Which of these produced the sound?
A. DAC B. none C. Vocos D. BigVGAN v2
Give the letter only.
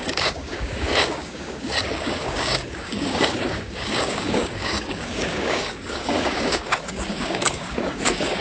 A